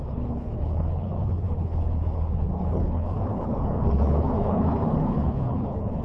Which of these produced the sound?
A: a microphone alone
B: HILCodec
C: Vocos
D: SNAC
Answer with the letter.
B